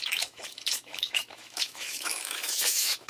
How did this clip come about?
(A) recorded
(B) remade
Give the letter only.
B